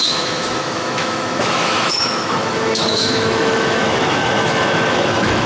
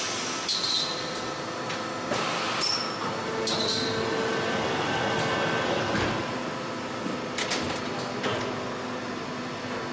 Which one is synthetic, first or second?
first